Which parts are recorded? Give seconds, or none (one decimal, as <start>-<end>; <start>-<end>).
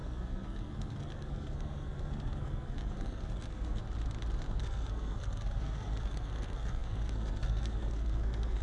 3.8-4.6